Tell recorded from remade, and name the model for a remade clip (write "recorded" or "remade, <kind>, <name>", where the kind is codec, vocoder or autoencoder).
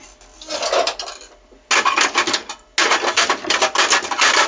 recorded